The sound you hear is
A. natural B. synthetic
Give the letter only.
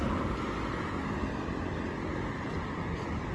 A